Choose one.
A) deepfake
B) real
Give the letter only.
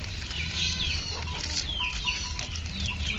B